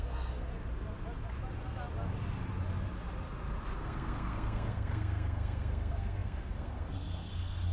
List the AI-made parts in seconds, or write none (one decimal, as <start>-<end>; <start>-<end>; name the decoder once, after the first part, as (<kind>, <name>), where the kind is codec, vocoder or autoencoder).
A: 0.0-0.5 (codec, SNAC); 3.8-7.7